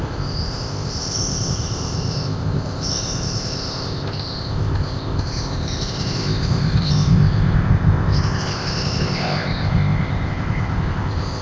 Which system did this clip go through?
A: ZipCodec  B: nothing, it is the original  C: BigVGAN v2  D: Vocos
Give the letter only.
A